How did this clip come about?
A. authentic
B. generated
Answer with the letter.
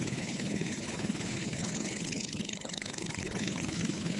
B